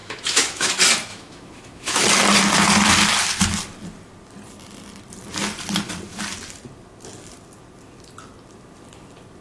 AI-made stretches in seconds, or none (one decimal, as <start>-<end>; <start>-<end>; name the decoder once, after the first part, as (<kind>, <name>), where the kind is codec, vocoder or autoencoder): 0.0-0.7 (autoencoder, DAC-VAE); 1.1-2.0